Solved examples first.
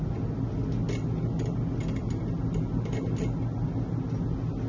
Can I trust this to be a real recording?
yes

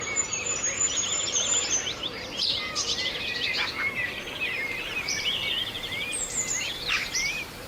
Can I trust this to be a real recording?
no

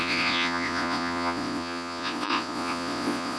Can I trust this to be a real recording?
no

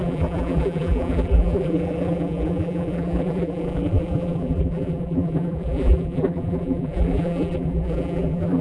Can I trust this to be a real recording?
no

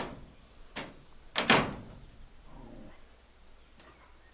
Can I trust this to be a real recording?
yes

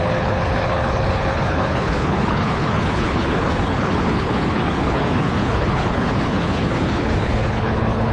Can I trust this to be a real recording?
no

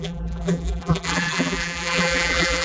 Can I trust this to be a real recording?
no